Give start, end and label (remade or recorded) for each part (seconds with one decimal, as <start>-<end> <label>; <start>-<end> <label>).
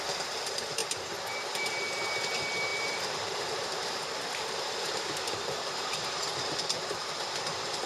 0.0-2.7 recorded; 2.7-6.2 remade; 6.2-7.9 recorded